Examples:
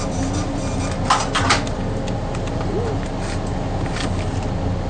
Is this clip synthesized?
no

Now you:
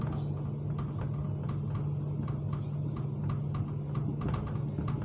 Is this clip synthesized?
no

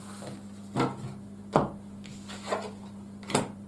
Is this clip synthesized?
no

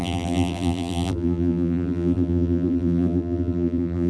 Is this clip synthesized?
yes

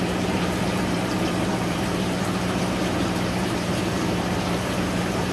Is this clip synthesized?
yes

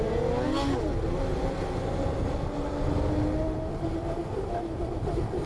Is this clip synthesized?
no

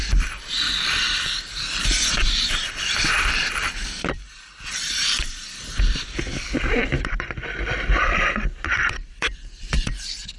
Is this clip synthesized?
yes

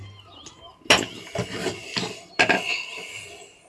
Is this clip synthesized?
no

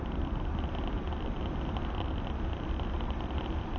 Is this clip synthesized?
no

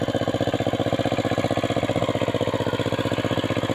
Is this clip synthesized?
no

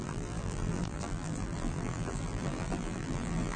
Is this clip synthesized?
yes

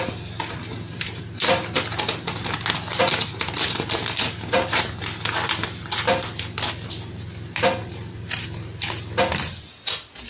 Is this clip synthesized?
no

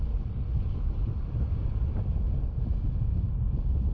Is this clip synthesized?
no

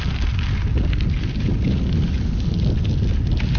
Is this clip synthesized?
no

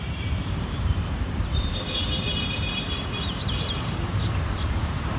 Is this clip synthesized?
yes